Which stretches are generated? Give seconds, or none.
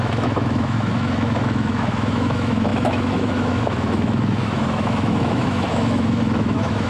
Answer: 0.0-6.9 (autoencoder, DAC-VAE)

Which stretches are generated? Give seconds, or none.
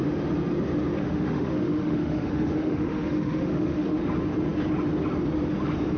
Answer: 1.0-4.0 (autoencoder, DAC-VAE)